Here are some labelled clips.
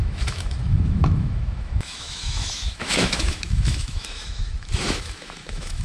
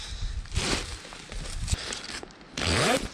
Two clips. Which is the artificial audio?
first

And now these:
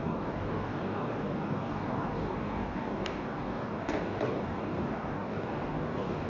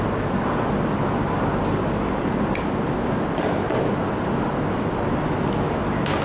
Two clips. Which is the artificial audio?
first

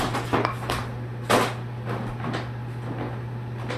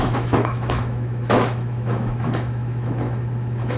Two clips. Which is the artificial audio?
second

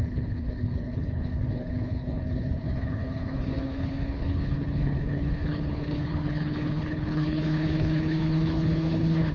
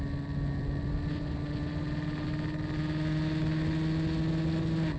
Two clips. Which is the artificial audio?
first